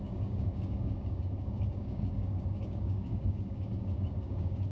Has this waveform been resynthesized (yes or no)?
yes